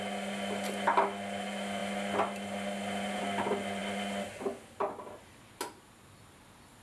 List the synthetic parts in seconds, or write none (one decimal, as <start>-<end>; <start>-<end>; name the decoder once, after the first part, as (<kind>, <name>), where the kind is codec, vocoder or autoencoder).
none